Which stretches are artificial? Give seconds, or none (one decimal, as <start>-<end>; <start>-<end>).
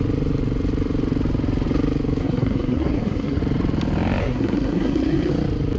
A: 2.2-3.4; 4.2-5.3